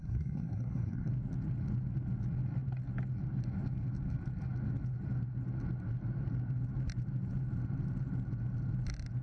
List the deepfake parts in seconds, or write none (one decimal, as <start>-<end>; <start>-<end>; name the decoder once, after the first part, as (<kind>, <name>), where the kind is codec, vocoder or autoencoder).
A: 0.0-1.1 (codec, SNAC)